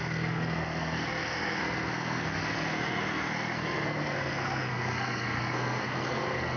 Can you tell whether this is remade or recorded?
remade